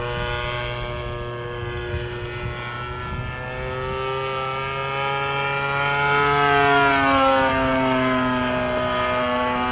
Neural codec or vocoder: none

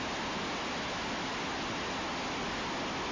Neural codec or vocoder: none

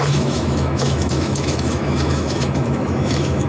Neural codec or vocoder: autoencoder, DAC-VAE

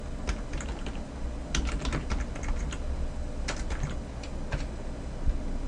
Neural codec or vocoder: none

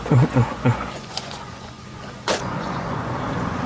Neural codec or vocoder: vocoder, Vocos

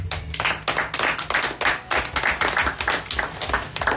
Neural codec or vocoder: none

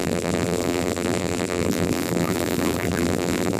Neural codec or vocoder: vocoder, BigVGAN v2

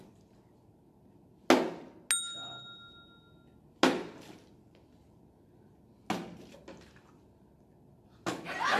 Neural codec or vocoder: none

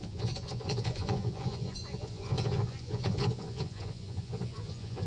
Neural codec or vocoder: vocoder, Vocos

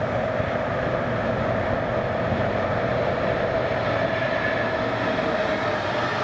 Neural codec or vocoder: none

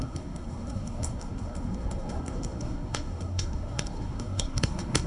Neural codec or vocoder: codec, SNAC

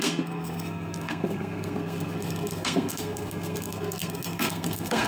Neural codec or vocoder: codec, SNAC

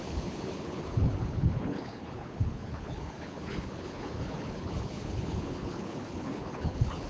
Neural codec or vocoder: codec, HILCodec